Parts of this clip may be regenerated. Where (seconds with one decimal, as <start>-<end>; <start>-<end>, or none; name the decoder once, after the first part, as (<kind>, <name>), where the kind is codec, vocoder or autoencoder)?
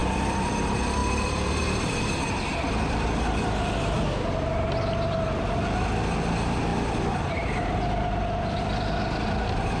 0.0-0.5 (vocoder, BigVGAN v2); 6.7-8.2